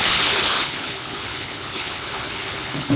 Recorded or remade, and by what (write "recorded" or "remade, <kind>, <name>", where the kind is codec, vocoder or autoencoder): remade, codec, HILCodec